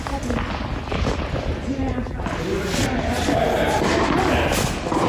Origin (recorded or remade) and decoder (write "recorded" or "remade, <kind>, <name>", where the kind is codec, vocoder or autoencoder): recorded